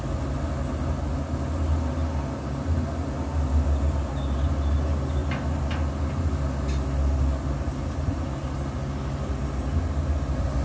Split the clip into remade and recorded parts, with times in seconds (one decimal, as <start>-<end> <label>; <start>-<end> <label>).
0.0-10.6 recorded